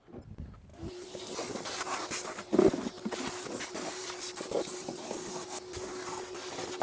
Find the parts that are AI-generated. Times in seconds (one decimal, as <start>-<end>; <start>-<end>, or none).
none